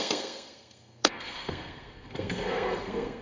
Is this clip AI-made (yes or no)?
yes